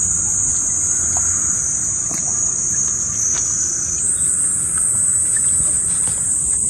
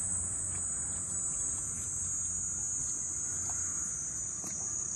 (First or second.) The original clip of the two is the second